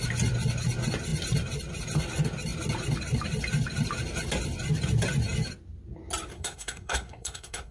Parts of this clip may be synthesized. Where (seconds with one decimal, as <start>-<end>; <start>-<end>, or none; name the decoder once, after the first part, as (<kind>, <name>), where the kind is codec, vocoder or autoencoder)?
6.3-7.7 (codec, SNAC)